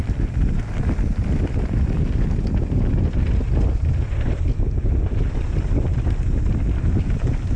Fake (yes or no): no